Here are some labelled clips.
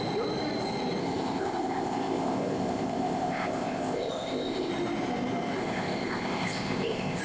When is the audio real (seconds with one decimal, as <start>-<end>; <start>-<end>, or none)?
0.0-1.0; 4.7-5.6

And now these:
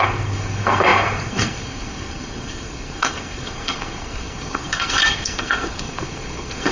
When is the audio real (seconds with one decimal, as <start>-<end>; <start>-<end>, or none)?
none

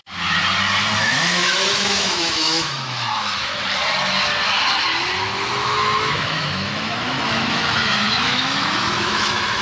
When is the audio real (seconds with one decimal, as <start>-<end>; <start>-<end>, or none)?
0.0-1.0; 3.6-5.5

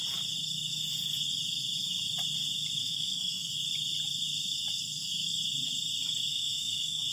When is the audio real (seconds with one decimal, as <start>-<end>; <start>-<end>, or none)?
0.0-2.8; 3.5-6.3

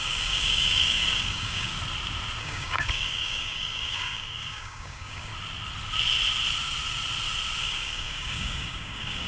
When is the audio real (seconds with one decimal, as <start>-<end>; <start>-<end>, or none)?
1.7-2.4; 5.3-7.6

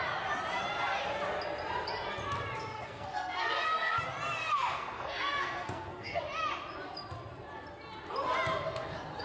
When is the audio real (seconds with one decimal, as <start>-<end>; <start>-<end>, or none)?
0.0-2.7; 4.0-4.5; 6.2-9.2